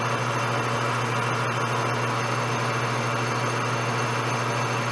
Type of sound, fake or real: real